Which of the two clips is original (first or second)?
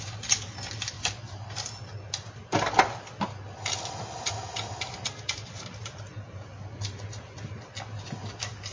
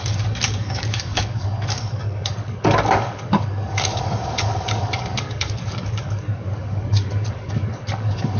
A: first